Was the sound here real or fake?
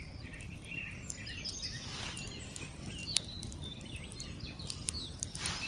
real